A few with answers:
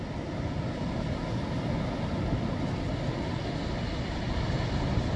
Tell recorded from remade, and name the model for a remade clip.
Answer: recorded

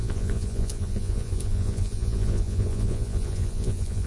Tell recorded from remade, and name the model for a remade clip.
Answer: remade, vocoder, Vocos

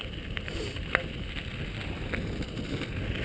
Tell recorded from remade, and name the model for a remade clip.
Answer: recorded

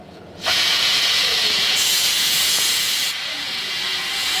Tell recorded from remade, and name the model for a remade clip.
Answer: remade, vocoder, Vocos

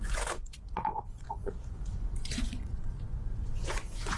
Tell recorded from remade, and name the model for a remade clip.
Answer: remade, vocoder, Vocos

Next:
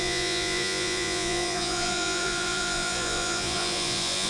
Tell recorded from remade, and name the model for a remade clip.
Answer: remade, vocoder, Vocos